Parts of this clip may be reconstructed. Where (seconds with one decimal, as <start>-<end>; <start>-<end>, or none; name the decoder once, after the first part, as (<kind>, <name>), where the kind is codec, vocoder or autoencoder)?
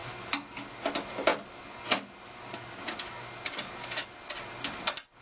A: none